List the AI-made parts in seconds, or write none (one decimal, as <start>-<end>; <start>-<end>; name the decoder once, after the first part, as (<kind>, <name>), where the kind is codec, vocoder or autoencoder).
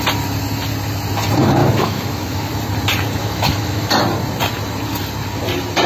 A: 1.6-2.5 (autoencoder, DAC-VAE); 3.2-3.9